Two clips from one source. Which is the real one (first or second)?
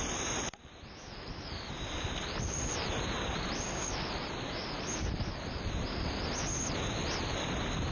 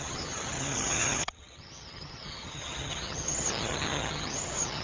first